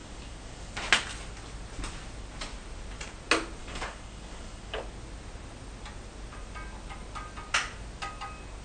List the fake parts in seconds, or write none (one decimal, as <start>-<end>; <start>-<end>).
0.0-0.7; 3.6-4.8